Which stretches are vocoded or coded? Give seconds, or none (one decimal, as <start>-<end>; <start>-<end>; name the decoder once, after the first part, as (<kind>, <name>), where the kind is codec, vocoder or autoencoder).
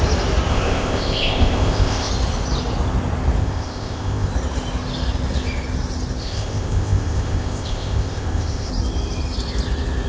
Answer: 0.5-2.1 (codec, ZipCodec); 3.4-4.3; 6.2-8.7